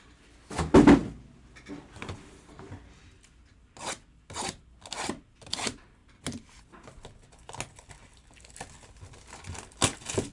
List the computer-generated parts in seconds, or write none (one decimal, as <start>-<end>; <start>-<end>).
none